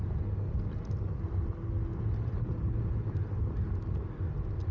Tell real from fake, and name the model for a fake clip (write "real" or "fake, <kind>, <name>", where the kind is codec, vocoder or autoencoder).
real